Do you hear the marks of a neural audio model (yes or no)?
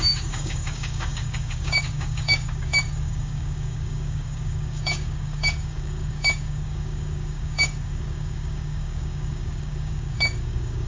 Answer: yes